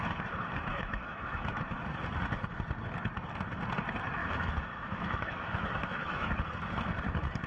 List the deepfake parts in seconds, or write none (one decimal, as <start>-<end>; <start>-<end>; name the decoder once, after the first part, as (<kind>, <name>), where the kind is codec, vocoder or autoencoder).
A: 0.7-1.6 (autoencoder, DAC-VAE); 4.2-6.3

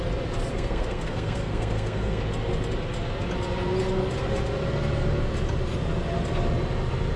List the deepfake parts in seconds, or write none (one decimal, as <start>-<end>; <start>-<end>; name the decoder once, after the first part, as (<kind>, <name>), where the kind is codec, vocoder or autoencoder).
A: 0.5-2.2 (codec, SNAC)

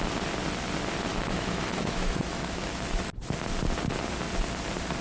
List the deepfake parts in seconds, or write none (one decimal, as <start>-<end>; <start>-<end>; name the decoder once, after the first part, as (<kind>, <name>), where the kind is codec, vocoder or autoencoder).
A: 1.1-3.2 (autoencoder, DAC-VAE)

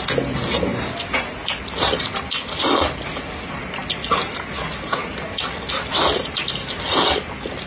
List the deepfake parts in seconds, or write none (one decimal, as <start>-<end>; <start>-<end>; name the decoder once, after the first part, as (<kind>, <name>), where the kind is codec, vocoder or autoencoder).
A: 0.0-0.7 (vocoder, BigVGAN v2); 2.6-3.8; 5.1-6.2

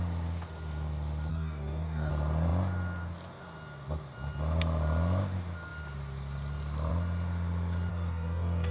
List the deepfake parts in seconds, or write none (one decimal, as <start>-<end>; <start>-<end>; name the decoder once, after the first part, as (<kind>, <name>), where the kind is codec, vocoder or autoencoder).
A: 1.3-2.1 (codec, DAC); 7.9-8.7